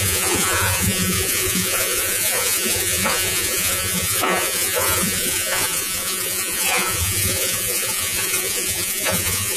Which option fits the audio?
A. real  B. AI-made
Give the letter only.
B